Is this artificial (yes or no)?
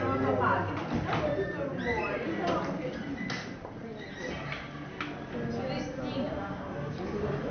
no